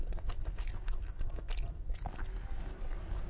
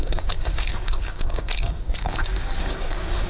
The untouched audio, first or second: first